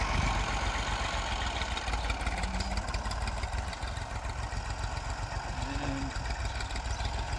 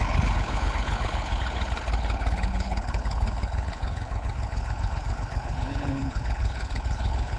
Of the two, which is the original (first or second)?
first